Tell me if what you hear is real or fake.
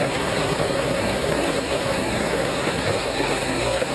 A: fake